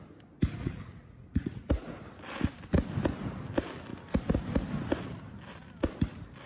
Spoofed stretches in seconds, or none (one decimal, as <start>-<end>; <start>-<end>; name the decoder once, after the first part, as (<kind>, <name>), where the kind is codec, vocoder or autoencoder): 0.6-1.7 (vocoder, Vocos)